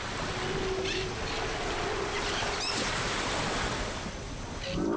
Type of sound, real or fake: real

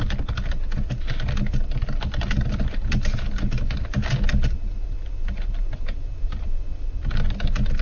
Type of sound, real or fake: real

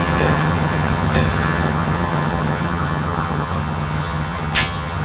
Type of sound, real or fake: fake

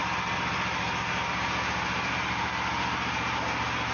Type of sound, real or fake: real